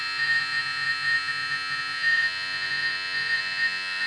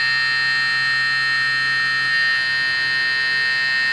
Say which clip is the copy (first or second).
first